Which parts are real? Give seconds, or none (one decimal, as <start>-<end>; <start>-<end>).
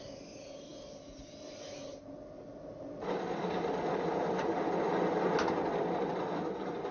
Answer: 0.0-6.9